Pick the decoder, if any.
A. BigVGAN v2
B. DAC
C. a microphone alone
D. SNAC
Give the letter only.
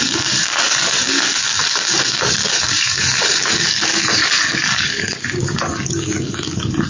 B